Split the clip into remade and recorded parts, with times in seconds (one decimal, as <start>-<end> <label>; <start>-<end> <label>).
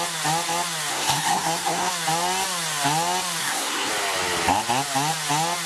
0.0-0.9 recorded; 0.9-1.9 remade; 1.9-3.4 recorded; 3.4-3.9 remade; 3.9-5.7 recorded